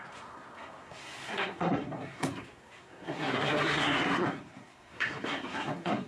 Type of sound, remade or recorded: remade